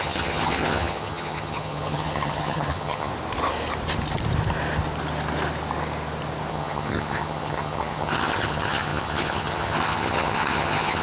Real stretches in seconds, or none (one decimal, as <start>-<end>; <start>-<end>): 3.1-6.5